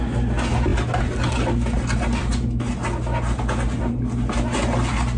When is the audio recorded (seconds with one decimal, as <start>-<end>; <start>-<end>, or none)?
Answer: 0.0-5.2